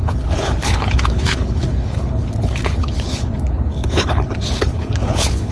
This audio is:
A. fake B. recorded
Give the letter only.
A